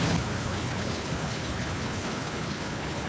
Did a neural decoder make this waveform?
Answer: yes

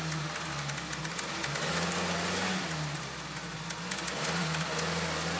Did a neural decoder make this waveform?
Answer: no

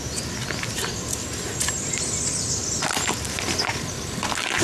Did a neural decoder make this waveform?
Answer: no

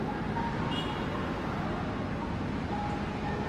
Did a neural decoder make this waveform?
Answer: no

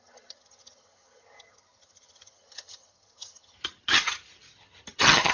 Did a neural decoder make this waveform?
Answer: yes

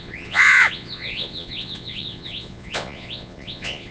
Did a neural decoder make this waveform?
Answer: yes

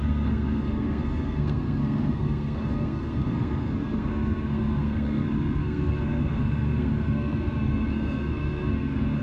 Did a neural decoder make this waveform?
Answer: yes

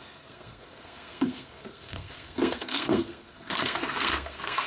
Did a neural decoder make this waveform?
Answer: yes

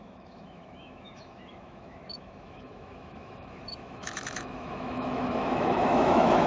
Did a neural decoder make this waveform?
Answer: yes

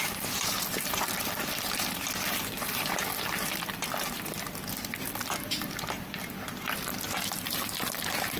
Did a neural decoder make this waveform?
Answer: no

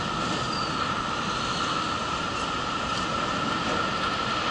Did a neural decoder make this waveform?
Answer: no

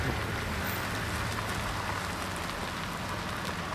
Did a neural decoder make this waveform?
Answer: no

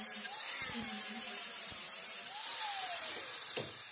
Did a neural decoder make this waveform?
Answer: yes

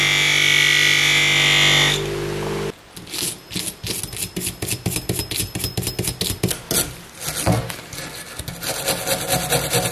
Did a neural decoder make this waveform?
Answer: no